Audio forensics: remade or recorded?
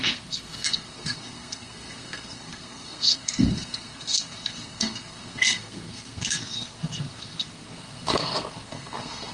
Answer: remade